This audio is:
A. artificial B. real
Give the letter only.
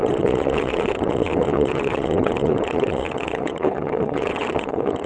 A